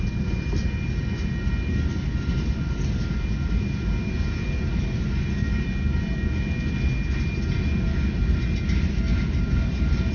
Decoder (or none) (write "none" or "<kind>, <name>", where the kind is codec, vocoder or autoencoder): none